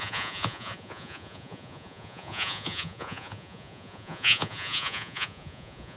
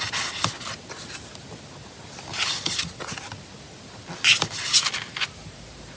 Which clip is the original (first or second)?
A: second